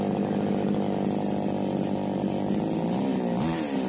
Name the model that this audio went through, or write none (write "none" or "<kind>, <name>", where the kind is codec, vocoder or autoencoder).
none